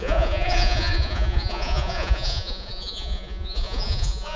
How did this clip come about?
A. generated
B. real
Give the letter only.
A